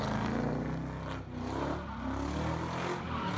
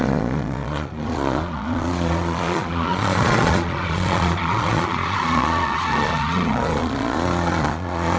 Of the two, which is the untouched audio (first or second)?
first